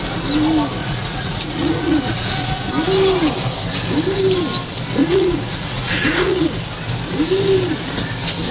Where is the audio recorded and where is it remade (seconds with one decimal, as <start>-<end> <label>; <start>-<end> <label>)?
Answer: 0.0-0.8 recorded; 0.8-2.7 remade; 2.7-5.0 recorded; 5.0-6.5 remade; 6.5-8.5 recorded